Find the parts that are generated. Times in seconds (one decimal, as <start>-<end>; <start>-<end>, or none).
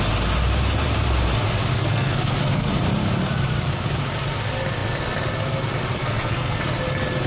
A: 1.7-2.7; 5.9-6.6